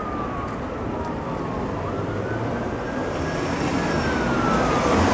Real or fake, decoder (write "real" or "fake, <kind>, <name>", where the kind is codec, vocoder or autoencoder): real